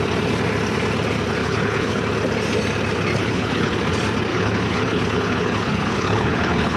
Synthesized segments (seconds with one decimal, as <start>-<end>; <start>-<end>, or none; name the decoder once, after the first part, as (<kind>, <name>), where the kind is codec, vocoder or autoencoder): 1.4-2.0 (codec, HILCodec); 3.2-3.7; 4.3-6.8